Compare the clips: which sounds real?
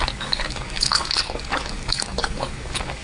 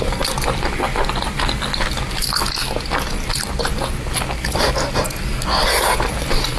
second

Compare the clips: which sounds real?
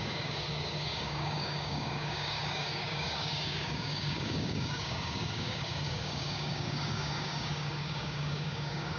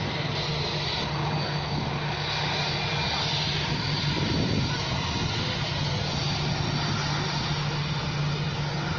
second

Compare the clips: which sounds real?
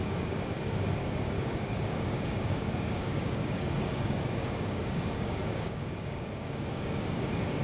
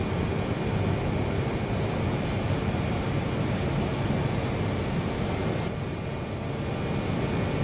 second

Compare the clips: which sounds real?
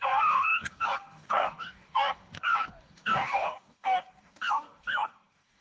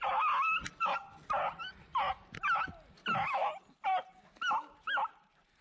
second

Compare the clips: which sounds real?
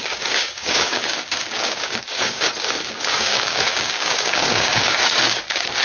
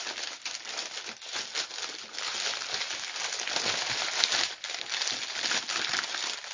second